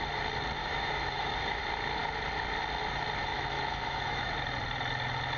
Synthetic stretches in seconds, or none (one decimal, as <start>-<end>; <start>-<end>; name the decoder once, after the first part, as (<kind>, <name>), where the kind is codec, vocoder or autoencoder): 0.6-1.6 (autoencoder, DAC-VAE); 3.2-4.3